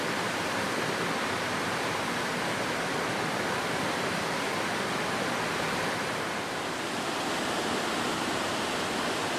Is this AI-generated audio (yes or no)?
no